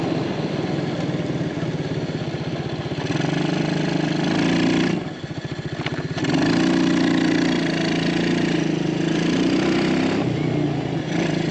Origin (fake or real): real